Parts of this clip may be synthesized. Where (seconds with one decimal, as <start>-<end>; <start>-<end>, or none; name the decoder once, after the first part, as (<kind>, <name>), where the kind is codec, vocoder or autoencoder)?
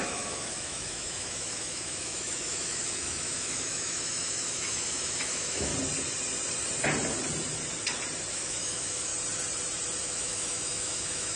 0.0-5.7 (autoencoder, DAC-VAE); 8.3-9.1; 10.0-11.4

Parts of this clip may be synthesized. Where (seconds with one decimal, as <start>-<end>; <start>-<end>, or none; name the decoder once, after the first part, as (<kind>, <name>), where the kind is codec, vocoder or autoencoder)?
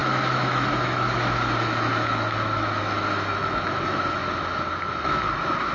0.0-4.2 (autoencoder, DAC-VAE); 4.8-5.7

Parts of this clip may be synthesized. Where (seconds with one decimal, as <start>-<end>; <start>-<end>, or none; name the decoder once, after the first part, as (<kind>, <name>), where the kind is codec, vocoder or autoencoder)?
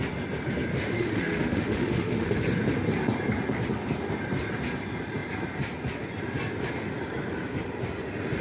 0.7-2.4 (autoencoder, DAC-VAE)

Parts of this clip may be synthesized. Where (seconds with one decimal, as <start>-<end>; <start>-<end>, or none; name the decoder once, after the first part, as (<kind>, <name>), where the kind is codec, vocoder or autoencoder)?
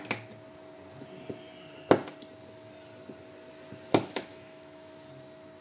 4.3-4.9 (autoencoder, DAC-VAE)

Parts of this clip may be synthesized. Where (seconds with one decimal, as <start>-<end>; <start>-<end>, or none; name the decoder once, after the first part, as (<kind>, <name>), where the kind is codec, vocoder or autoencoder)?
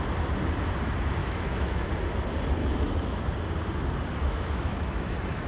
1.2-1.9 (autoencoder, DAC-VAE); 2.6-3.2; 4.2-5.5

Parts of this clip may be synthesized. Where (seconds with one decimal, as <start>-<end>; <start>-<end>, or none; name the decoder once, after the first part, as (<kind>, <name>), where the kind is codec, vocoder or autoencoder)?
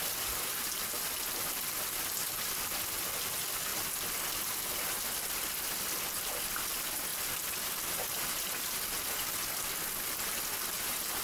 none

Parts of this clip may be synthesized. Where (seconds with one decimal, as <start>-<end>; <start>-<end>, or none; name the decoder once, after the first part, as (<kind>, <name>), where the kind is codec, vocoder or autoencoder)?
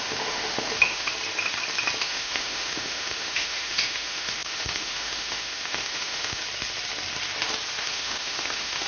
0.0-1.1 (autoencoder, DAC-VAE); 2.0-6.4; 7.8-8.9